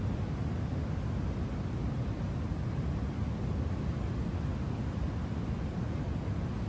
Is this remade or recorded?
recorded